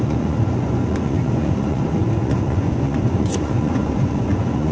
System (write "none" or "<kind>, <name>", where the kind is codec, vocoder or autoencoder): vocoder, Vocos